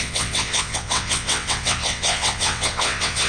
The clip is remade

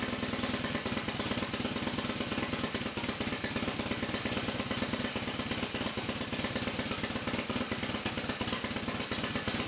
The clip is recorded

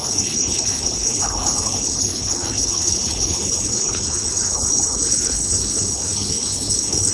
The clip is remade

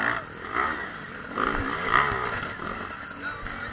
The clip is recorded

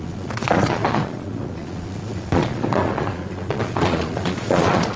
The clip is remade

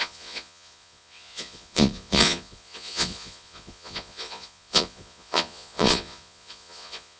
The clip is remade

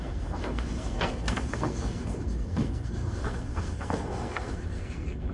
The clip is remade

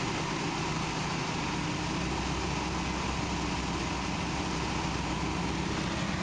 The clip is recorded